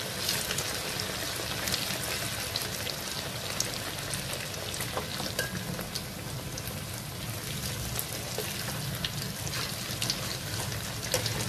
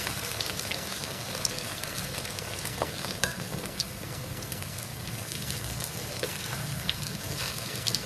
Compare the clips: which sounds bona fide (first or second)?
first